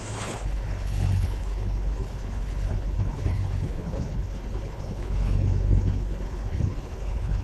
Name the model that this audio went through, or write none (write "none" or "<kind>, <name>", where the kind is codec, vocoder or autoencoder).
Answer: codec, HILCodec